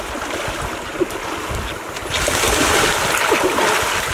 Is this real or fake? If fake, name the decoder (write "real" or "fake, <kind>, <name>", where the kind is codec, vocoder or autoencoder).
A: real